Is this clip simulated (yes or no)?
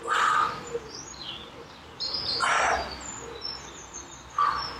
no